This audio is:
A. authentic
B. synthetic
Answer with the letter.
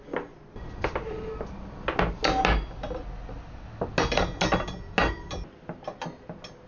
A